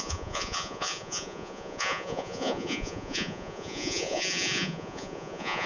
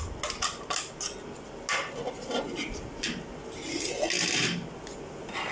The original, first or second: second